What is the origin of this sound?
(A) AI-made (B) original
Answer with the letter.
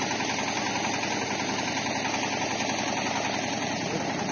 B